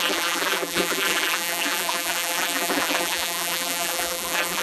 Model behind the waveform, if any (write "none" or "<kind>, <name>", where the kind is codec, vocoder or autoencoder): vocoder, BigVGAN v2